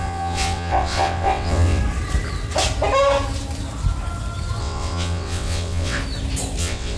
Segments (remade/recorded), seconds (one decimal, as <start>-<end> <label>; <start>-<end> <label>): 0.0-1.8 remade; 1.8-4.6 recorded; 4.6-6.0 remade; 6.0-6.6 recorded; 6.6-7.0 remade